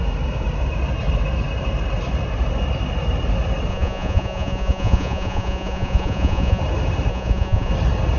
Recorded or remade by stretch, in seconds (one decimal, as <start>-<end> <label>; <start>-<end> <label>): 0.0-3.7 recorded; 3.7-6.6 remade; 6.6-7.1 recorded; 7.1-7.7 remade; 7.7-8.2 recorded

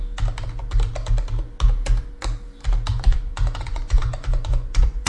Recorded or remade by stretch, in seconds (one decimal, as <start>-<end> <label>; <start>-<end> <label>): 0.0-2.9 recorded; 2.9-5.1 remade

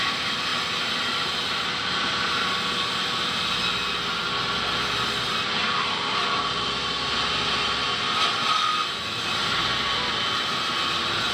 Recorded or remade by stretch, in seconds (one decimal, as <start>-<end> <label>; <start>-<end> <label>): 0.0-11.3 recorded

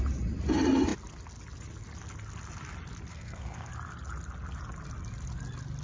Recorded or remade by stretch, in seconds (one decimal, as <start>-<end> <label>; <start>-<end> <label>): 0.0-3.1 recorded; 3.1-3.7 remade; 3.7-5.8 recorded

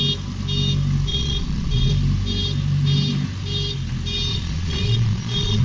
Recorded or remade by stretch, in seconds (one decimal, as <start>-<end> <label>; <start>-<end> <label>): 0.0-1.1 recorded; 1.1-1.9 remade; 1.9-4.3 recorded; 4.3-5.6 remade

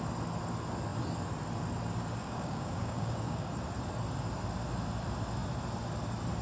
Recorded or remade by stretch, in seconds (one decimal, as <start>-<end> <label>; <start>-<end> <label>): 0.0-2.2 recorded; 2.2-3.5 remade; 3.5-6.4 recorded

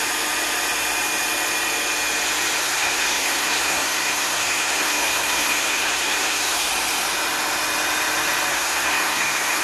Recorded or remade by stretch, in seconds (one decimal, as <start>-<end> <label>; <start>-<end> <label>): 0.0-2.6 recorded; 2.6-6.7 remade; 6.7-8.5 recorded; 8.5-9.6 remade